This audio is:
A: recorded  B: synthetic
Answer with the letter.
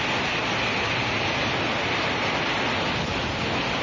A